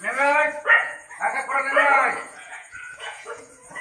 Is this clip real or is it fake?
fake